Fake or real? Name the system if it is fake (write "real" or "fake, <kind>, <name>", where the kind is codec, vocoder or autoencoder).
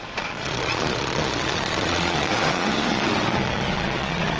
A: fake, vocoder, Vocos